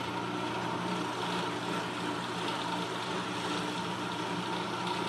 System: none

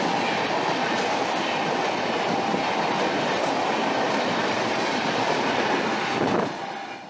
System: none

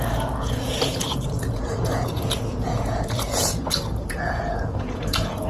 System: vocoder, Vocos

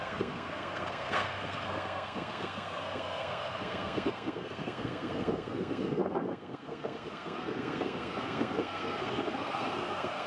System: codec, SNAC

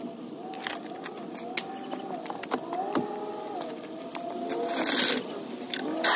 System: none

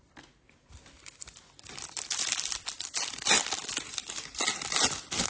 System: none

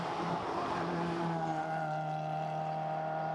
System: none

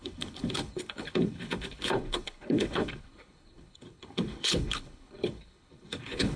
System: codec, HILCodec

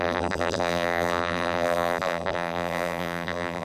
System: vocoder, BigVGAN v2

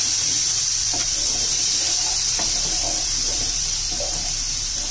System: vocoder, BigVGAN v2